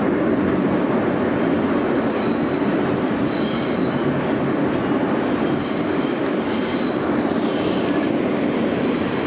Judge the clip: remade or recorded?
recorded